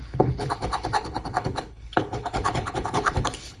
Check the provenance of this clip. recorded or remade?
remade